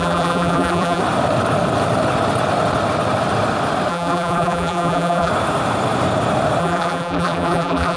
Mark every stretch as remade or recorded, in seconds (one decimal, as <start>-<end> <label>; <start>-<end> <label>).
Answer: 0.0-1.0 remade; 1.0-3.9 recorded; 3.9-5.3 remade; 5.3-6.6 recorded; 6.6-8.0 remade